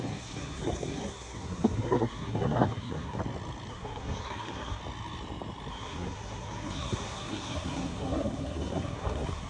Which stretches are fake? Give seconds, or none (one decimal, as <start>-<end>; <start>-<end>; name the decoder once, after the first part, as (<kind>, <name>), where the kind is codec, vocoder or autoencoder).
0.0-3.2 (codec, SNAC); 3.7-4.8; 5.7-9.5